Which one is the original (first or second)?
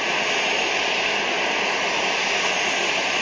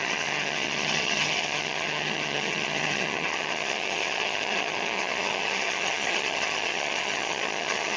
first